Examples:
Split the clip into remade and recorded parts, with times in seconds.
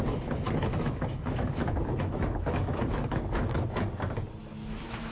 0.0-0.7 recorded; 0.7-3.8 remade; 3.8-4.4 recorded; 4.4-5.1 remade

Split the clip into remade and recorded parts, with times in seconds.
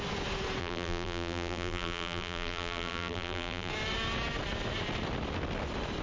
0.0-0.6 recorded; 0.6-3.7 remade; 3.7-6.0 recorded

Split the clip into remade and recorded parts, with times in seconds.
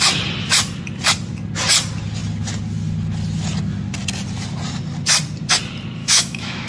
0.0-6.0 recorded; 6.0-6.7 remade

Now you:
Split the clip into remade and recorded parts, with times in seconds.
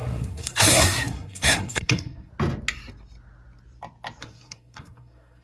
0.0-2.3 remade; 2.3-4.2 recorded; 4.2-5.4 remade